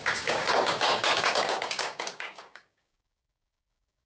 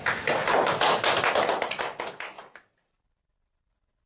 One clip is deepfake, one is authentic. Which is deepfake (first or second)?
first